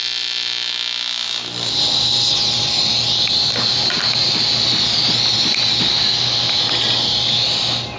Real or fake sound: real